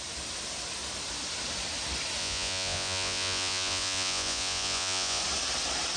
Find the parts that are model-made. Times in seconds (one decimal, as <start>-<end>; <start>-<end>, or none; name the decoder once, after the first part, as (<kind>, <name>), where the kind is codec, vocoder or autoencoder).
2.2-5.2 (vocoder, Vocos)